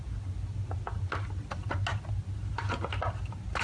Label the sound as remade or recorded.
recorded